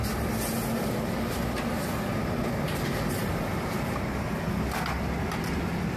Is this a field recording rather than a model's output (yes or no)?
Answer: yes